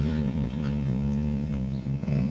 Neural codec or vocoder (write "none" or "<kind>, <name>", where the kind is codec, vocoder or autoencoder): vocoder, Vocos